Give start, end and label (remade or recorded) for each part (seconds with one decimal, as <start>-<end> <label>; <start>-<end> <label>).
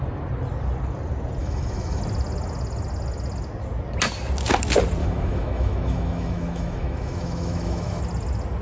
0.0-1.4 recorded; 1.4-2.0 remade; 2.0-5.0 recorded; 5.0-8.0 remade; 8.0-8.6 recorded